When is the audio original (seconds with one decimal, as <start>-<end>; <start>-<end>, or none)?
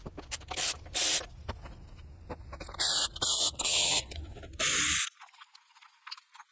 0.0-3.4; 4.4-6.5